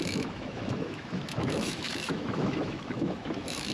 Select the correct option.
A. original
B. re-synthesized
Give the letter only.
B